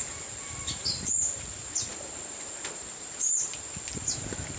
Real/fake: fake